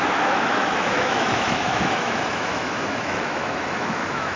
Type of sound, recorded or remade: remade